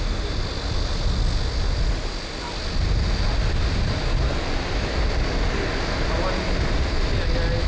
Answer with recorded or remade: recorded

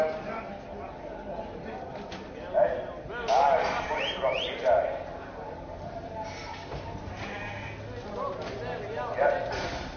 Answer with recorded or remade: recorded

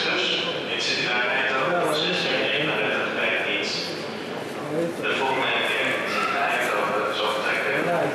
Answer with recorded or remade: recorded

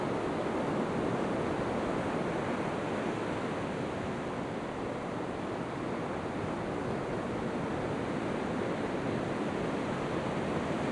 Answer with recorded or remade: recorded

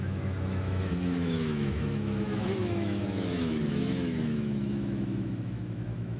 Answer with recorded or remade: remade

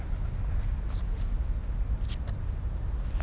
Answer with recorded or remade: recorded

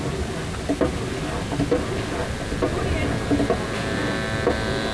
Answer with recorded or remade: recorded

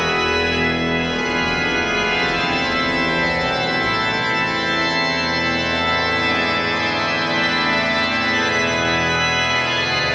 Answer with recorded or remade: recorded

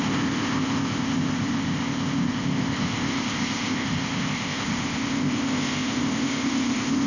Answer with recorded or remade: remade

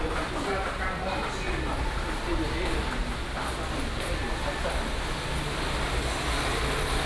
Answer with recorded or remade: recorded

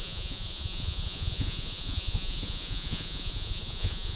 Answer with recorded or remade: remade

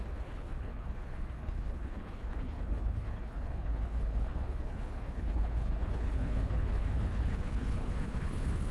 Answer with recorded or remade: remade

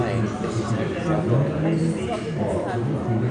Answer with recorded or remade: recorded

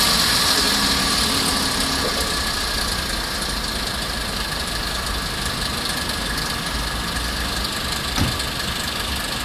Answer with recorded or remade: recorded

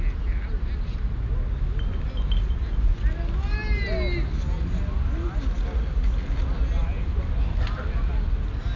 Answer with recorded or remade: recorded